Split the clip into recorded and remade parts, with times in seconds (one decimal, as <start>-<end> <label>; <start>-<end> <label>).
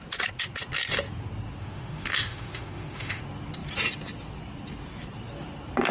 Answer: 0.0-1.6 recorded; 1.6-3.2 remade; 3.2-5.9 recorded